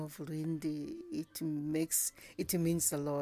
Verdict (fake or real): real